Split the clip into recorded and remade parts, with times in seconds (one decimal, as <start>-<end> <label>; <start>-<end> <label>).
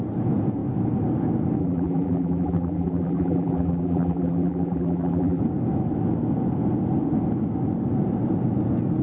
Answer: 0.0-1.6 recorded; 1.6-5.4 remade; 5.4-9.0 recorded